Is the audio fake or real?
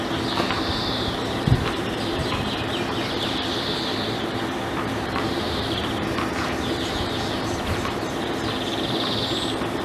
fake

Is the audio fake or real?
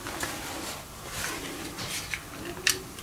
real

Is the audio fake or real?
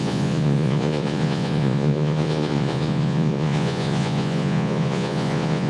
fake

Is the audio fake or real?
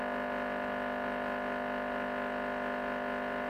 real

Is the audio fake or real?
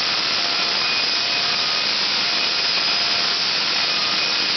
real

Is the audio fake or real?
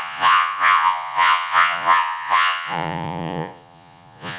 fake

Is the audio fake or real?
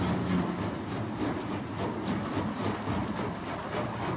real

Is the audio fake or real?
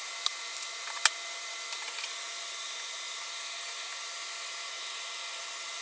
real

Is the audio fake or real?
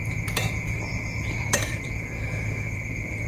fake